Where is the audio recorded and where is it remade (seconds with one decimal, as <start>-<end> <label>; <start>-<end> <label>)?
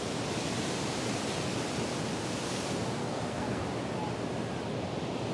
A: 0.0-3.0 recorded; 3.0-3.6 remade; 3.6-5.3 recorded